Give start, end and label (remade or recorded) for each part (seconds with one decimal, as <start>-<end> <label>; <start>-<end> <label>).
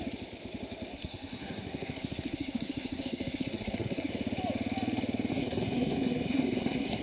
0.0-0.9 recorded; 0.9-4.1 remade; 4.1-5.3 recorded; 5.3-7.0 remade